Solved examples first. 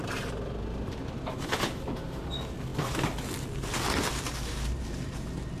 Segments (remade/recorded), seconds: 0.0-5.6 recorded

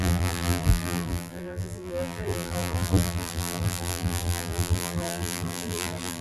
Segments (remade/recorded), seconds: 0.0-6.2 remade

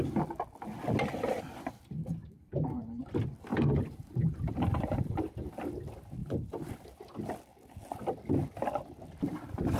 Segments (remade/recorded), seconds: 0.0-2.2 recorded; 2.2-3.0 remade; 3.0-3.5 recorded; 3.5-5.5 remade; 5.5-6.2 recorded; 6.2-6.7 remade; 6.7-9.8 recorded

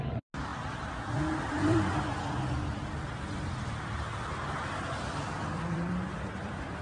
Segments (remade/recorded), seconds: 0.0-0.5 recorded; 0.5-3.8 remade; 3.8-5.4 recorded; 5.4-6.8 remade

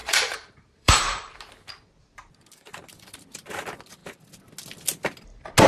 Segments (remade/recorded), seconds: 0.0-1.4 remade; 1.4-5.7 recorded

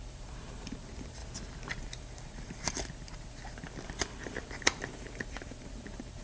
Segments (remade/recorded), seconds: 0.0-1.2 remade; 1.2-1.8 recorded; 1.8-6.2 remade

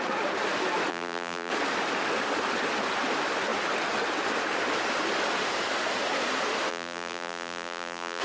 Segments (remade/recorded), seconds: 0.0-0.9 recorded; 0.9-1.5 remade; 1.5-6.7 recorded; 6.7-8.2 remade

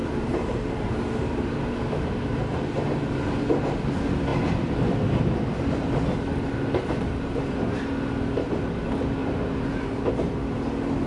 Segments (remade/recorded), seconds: 0.0-3.5 remade; 3.5-9.2 recorded; 9.2-10.1 remade; 10.1-11.1 recorded